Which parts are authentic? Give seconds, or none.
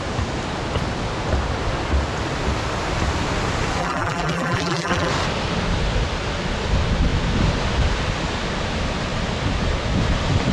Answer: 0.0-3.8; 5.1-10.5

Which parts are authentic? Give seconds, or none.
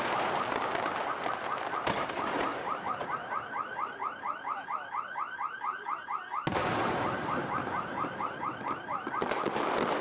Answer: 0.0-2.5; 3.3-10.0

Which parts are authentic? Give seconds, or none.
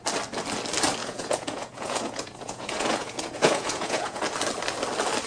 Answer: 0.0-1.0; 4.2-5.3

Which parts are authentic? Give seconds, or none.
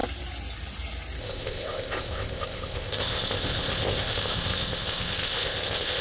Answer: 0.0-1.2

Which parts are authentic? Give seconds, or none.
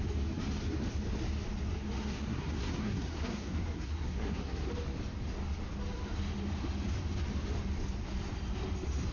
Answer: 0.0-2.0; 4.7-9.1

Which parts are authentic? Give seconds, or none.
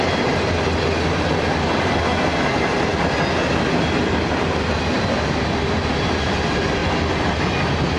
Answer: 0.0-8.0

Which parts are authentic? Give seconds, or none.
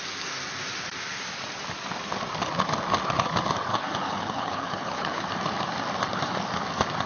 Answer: 0.0-3.7; 5.3-7.1